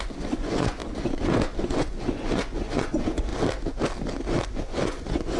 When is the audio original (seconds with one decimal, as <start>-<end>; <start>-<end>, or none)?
3.3-4.6